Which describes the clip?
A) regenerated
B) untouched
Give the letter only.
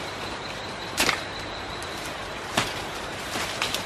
A